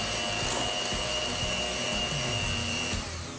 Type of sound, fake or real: real